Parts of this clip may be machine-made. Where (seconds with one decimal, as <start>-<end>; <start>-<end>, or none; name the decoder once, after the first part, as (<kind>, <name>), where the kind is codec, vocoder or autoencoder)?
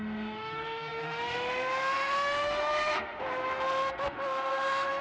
0.0-5.0 (autoencoder, DAC-VAE)